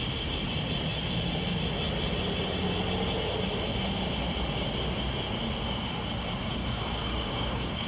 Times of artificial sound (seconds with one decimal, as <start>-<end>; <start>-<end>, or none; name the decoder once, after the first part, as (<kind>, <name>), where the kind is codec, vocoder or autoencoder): 6.6-7.9 (codec, DAC)